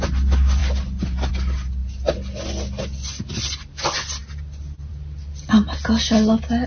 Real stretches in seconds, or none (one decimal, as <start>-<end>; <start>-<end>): 0.0-6.7